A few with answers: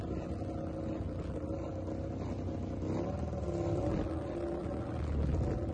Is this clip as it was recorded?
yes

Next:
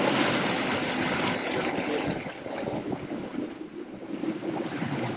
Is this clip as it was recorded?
yes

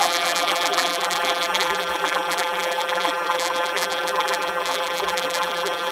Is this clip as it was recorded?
no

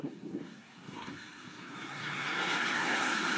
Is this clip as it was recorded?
no